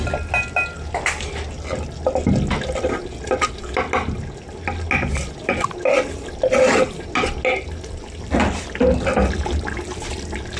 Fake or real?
real